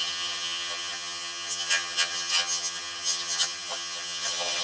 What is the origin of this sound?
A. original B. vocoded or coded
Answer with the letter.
B